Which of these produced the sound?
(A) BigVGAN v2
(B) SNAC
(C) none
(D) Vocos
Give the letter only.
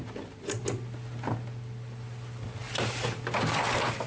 C